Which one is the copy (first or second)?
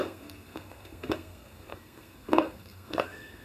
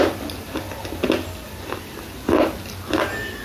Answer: first